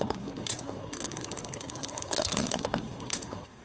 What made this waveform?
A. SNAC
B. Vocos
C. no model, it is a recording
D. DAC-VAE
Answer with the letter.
A